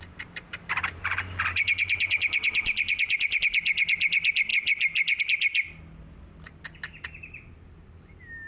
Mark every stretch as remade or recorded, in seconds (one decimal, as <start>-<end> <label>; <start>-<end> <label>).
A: 0.0-0.5 recorded; 0.5-3.4 remade; 3.4-8.5 recorded